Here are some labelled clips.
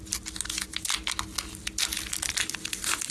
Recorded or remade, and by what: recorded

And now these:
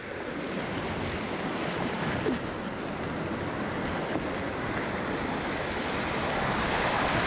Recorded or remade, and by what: recorded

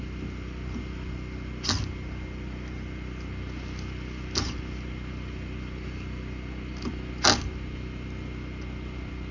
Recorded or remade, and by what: recorded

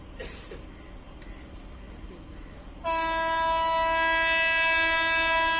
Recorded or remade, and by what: recorded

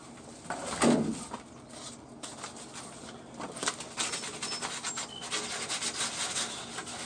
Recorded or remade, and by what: recorded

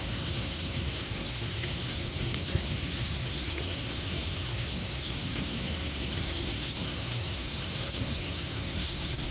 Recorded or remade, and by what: remade, codec, SNAC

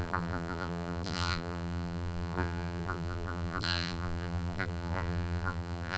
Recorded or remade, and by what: remade, vocoder, BigVGAN v2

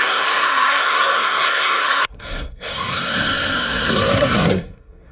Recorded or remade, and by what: remade, codec, SNAC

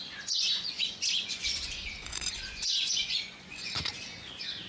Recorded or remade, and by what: remade, vocoder, Vocos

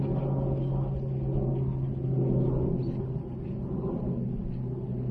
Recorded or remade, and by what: recorded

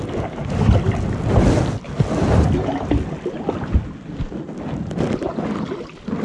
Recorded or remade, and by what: recorded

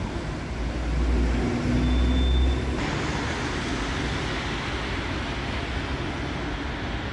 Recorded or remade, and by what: recorded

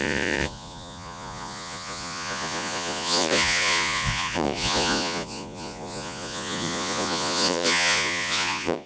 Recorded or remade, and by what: remade, vocoder, Vocos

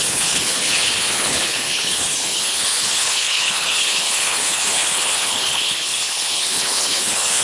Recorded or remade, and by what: remade, codec, HILCodec